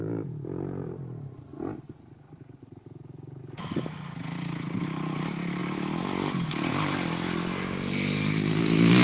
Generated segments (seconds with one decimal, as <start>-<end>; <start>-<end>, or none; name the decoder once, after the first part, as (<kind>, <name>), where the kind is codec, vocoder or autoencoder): none